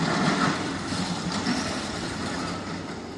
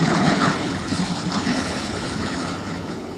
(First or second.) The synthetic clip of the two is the second